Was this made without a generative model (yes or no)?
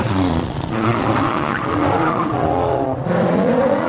no